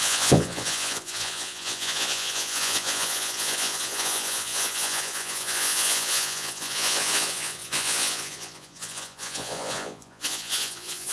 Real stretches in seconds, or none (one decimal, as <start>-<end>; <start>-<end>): none